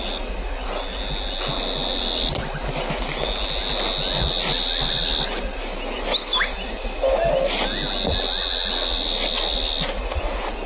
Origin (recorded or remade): recorded